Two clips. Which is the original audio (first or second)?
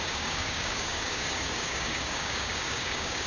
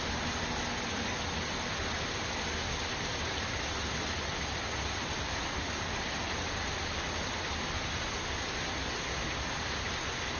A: second